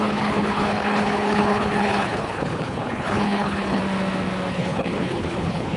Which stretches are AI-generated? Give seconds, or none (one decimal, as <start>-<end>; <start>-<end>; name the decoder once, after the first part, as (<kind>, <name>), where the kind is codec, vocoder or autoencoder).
0.0-3.8 (codec, HILCodec); 4.5-5.8